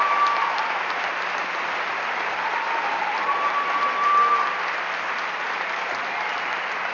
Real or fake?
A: real